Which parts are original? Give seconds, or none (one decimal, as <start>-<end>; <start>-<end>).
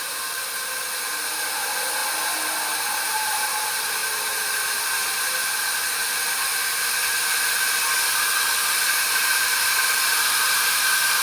2.0-2.7; 6.5-9.0